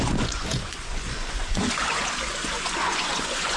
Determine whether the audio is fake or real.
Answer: fake